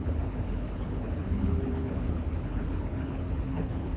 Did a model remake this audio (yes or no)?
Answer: yes